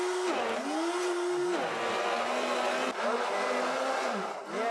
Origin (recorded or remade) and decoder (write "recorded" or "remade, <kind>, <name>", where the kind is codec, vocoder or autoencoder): recorded